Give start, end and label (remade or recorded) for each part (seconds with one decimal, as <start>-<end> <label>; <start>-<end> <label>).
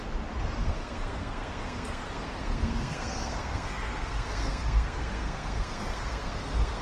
0.0-0.6 recorded; 0.6-6.8 remade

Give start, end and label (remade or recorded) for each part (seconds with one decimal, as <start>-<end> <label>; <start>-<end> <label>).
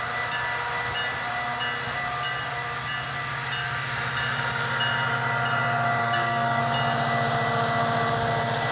0.0-6.0 recorded; 6.0-6.6 remade; 6.6-8.7 recorded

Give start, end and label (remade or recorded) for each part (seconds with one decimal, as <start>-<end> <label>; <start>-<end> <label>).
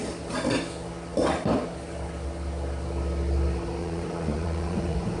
0.0-3.8 recorded; 3.8-5.2 remade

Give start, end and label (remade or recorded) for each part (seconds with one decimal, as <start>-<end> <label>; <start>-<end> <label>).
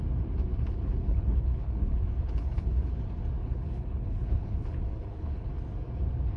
0.0-0.5 recorded; 0.5-2.9 remade; 2.9-3.4 recorded; 3.4-5.5 remade; 5.5-6.4 recorded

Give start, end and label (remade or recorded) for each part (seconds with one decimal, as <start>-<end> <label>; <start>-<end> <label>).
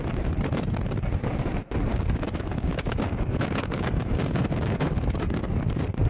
0.0-1.9 recorded; 1.9-5.6 remade; 5.6-6.1 recorded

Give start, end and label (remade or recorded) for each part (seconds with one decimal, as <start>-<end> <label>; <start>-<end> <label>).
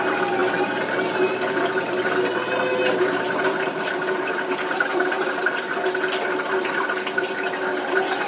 0.0-8.3 recorded